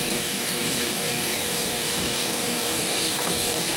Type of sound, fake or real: fake